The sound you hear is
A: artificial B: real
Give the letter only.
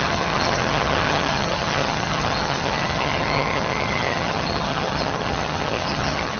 A